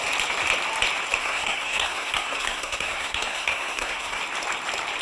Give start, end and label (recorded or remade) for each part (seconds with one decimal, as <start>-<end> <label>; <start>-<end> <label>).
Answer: 0.0-1.2 recorded; 1.2-4.2 remade; 4.2-5.0 recorded